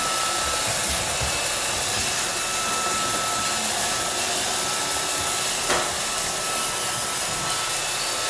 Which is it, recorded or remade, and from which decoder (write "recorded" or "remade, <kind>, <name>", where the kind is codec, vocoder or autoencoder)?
recorded